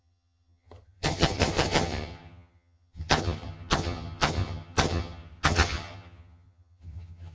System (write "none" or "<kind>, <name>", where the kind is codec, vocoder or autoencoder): vocoder, HiFi-GAN